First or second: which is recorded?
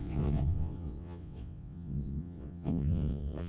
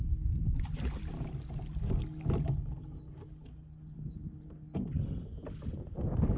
second